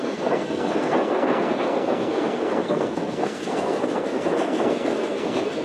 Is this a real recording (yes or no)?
no